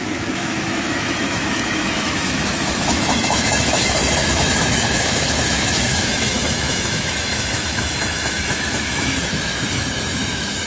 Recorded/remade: remade